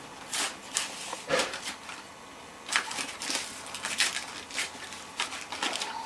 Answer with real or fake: real